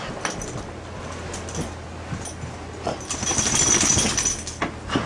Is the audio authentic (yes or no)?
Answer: yes